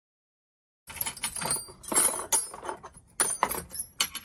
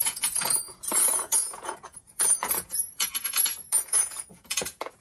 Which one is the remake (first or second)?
second